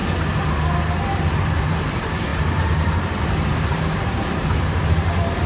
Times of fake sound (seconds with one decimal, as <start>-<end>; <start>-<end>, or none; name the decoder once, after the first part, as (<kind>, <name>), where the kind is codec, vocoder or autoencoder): 1.2-5.5 (vocoder, BigVGAN v2)